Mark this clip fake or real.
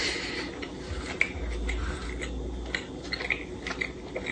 real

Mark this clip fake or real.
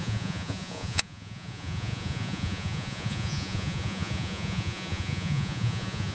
fake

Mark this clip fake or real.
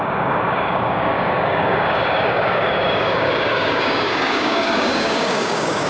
fake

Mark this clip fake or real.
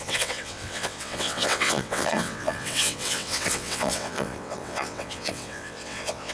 fake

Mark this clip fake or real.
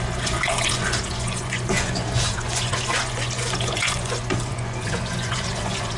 fake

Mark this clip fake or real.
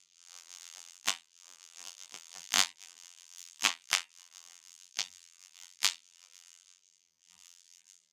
fake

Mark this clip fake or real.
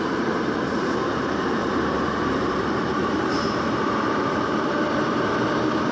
fake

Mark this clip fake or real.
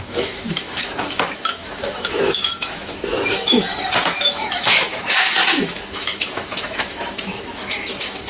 fake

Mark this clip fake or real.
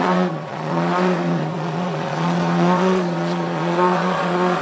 fake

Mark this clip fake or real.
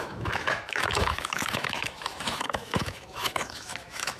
fake